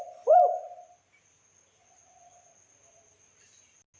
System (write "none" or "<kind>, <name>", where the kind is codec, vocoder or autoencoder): none